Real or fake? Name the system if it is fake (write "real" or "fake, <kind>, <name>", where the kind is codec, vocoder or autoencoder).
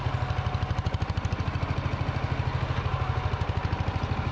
real